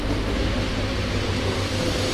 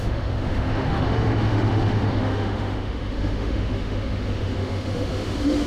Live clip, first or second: first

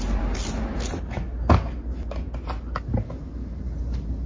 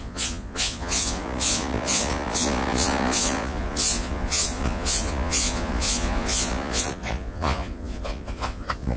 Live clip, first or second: first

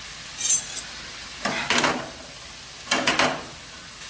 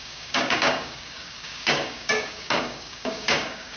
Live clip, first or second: first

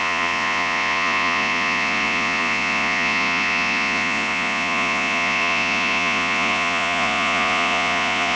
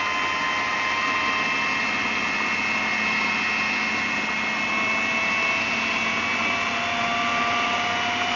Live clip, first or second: second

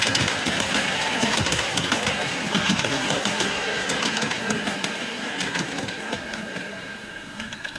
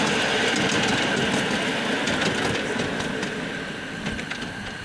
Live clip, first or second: second